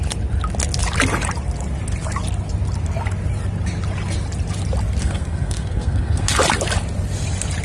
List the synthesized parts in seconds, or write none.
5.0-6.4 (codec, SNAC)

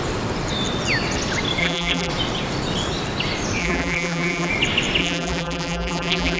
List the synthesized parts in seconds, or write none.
1.6-2.1 (vocoder, BigVGAN v2); 3.6-4.5; 5.0-6.4

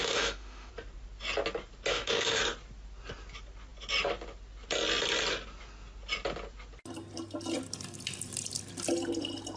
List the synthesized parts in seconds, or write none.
0.0-0.7 (autoencoder, DAC-VAE); 1.9-2.4

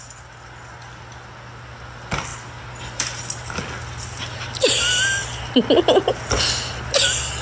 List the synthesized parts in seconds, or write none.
none

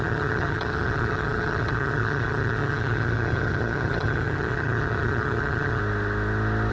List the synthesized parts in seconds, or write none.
0.0-5.8 (vocoder, HiFi-GAN)

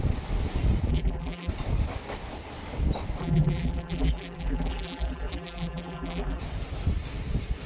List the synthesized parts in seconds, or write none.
0.9-1.5 (vocoder, BigVGAN v2); 3.2-6.4